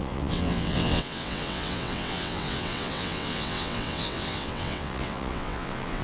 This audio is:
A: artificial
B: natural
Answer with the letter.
A